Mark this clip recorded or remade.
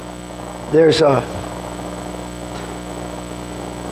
recorded